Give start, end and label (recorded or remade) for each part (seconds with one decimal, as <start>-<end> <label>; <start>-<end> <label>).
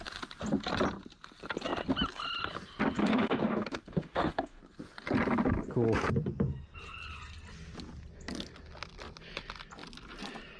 0.0-3.0 recorded; 3.0-4.6 remade; 4.6-10.6 recorded